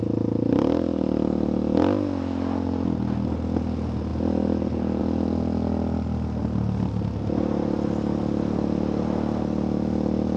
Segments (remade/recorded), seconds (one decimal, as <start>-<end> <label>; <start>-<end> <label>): 0.0-10.4 recorded